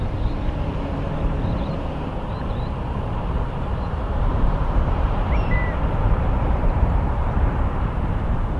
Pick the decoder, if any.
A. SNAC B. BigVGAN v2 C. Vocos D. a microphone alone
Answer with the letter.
B